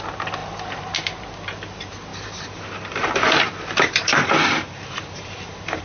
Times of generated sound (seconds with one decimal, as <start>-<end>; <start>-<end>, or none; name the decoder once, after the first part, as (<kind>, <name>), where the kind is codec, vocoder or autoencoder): 2.1-5.8 (vocoder, BigVGAN v2)